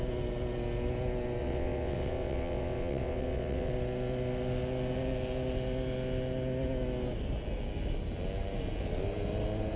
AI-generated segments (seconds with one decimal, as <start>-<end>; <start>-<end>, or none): 1.4-3.7